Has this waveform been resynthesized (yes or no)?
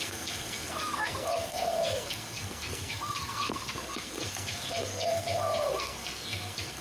yes